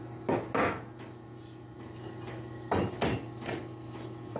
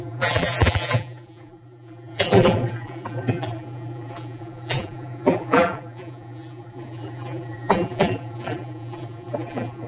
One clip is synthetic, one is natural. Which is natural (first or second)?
first